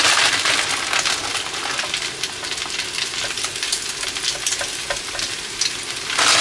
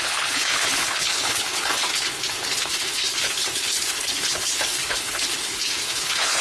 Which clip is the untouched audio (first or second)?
first